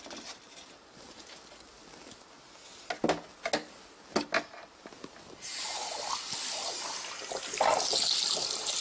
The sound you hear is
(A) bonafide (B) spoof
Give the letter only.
A